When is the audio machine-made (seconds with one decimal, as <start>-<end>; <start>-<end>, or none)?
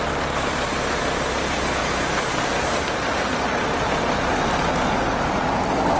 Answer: none